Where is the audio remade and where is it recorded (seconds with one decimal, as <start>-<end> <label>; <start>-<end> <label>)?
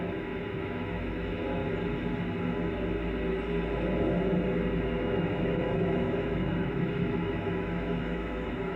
0.0-1.6 remade; 1.6-5.0 recorded; 5.0-8.8 remade